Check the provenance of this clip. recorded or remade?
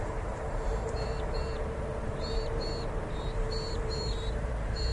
remade